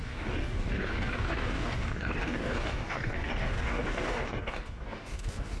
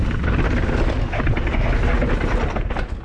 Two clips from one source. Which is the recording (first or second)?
second